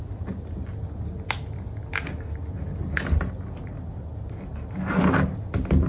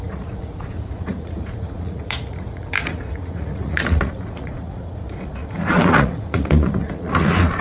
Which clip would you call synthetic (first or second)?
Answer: second